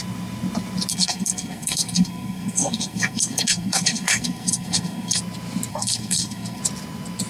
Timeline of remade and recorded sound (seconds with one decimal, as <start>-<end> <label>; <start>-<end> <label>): 0.0-0.9 recorded; 0.9-5.2 remade; 5.2-5.7 recorded; 5.7-6.6 remade; 6.6-7.3 recorded

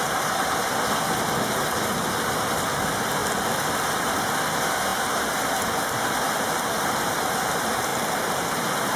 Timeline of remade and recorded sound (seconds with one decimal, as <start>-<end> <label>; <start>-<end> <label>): 0.0-9.0 recorded